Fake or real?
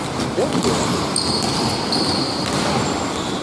real